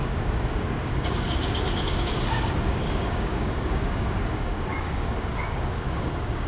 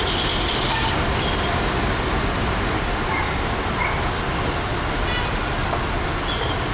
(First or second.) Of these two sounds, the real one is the second